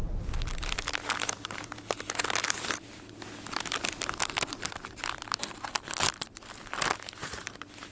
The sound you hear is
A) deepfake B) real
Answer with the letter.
B